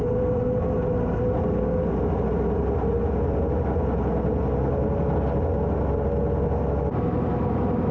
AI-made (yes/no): no